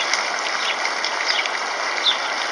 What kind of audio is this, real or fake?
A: real